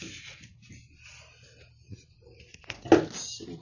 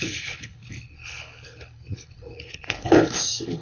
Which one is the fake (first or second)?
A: second